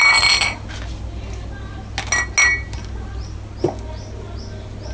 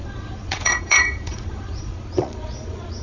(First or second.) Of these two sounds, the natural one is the first